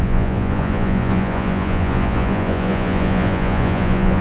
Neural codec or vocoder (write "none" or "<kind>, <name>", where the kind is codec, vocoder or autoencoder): vocoder, Vocos